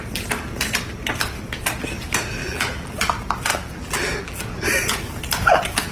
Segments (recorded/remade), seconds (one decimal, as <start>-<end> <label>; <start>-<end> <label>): 0.0-2.4 recorded; 2.4-2.9 remade; 2.9-3.5 recorded; 3.5-4.4 remade; 4.4-5.9 recorded